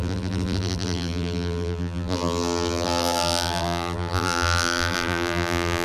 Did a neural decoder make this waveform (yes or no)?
yes